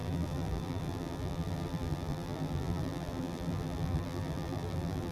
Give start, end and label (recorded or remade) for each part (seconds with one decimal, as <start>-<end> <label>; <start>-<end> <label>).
0.0-5.1 remade